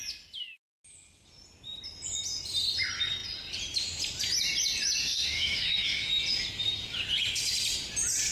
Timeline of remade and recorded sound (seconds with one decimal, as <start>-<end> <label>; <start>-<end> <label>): 0.0-5.0 recorded; 5.0-6.1 remade; 6.1-8.3 recorded